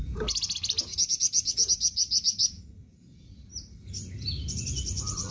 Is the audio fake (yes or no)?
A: no